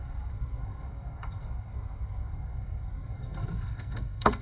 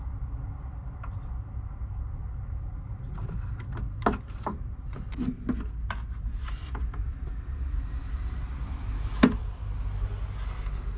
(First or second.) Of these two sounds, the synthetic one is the first